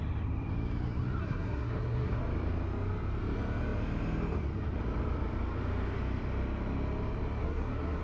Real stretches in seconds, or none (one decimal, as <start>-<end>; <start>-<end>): 0.0-1.2; 2.2-7.4

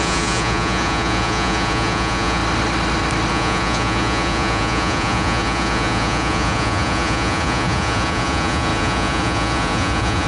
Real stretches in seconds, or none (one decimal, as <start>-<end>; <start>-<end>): 2.4-3.3

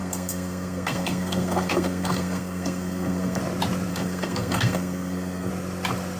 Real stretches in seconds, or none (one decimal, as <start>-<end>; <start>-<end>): 3.4-3.9; 5.5-6.2

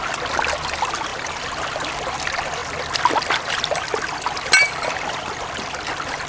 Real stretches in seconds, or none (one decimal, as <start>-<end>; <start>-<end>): 0.0-6.3

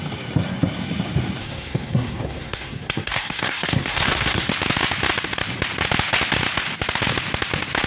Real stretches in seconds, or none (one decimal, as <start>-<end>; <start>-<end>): 0.0-1.4; 4.5-7.9